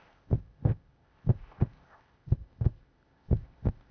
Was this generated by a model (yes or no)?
yes